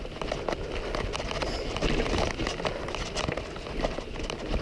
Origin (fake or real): real